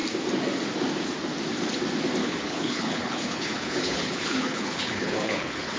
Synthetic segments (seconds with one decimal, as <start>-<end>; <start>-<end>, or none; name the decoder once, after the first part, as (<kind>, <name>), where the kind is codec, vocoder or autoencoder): 2.2-5.8 (codec, HILCodec)